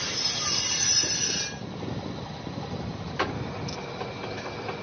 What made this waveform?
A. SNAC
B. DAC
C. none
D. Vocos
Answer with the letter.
C